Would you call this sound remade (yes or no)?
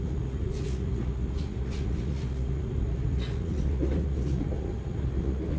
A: yes